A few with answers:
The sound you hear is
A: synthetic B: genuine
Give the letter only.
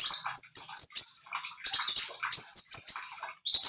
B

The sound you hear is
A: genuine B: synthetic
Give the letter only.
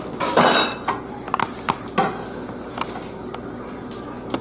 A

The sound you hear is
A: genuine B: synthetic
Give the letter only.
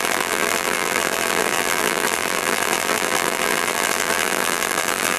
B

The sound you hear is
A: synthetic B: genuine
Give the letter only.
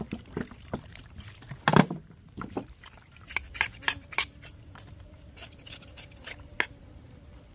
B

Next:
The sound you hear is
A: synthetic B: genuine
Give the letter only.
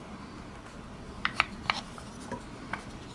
A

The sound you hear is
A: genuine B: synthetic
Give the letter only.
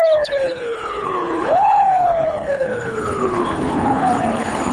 B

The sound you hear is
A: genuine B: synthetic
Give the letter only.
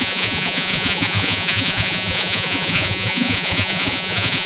B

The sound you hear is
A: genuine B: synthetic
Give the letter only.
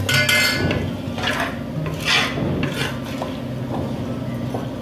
A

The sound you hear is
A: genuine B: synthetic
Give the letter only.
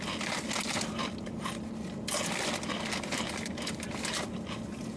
A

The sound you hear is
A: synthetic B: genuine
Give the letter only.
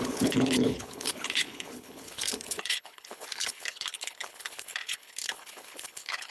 A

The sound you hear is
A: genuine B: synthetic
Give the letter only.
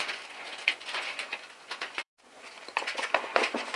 B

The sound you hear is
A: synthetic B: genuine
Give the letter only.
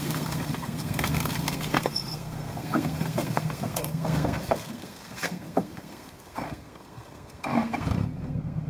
A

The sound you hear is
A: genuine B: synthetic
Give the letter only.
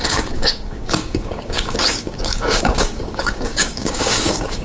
B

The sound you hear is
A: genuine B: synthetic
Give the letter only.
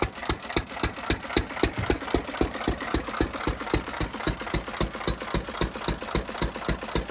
A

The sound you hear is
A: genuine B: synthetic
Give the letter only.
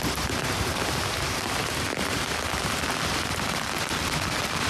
B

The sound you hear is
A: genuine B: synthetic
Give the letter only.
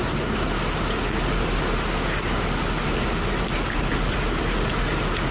A